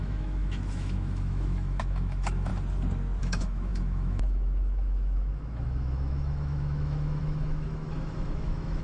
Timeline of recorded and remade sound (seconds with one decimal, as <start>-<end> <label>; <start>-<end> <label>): 0.0-2.5 remade; 2.5-3.2 recorded; 3.2-8.8 remade